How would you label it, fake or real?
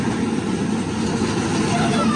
real